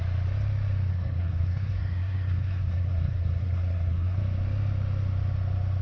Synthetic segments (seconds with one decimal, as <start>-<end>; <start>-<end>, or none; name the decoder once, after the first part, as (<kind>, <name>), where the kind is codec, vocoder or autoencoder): 0.9-4.2 (codec, SNAC)